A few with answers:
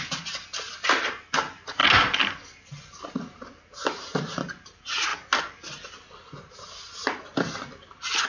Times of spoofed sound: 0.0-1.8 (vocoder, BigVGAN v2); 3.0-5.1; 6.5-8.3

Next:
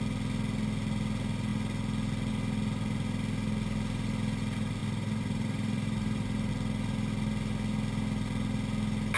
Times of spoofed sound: 4.8-6.5 (vocoder, BigVGAN v2)

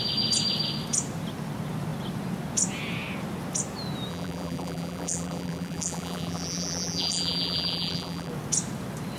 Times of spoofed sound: 4.1-8.3 (vocoder, BigVGAN v2)

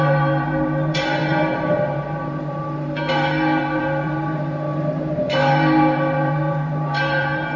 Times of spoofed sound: 0.0-7.6 (vocoder, BigVGAN v2)